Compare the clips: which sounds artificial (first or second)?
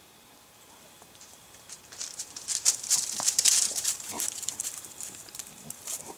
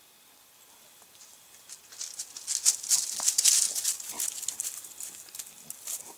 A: first